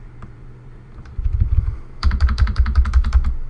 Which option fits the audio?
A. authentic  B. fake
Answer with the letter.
B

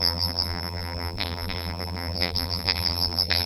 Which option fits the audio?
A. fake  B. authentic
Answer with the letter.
A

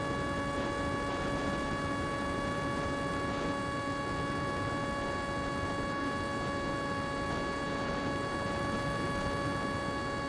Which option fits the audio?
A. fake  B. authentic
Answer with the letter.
B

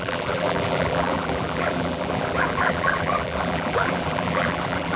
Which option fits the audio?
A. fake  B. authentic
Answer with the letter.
A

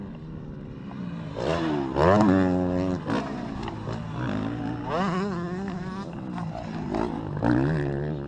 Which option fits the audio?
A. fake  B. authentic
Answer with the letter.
B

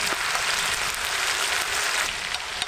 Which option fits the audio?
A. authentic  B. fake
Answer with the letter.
A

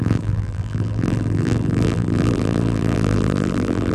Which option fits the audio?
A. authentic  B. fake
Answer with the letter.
B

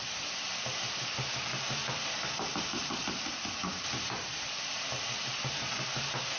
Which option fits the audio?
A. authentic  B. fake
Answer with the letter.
B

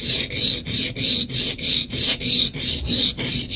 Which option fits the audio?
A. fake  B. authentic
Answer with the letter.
B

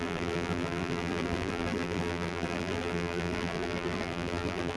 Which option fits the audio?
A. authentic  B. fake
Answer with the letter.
B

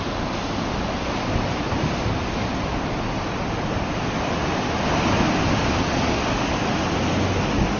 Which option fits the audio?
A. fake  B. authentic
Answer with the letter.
B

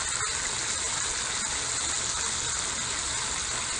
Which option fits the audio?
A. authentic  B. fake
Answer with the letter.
A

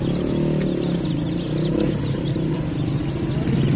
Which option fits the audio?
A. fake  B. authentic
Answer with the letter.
B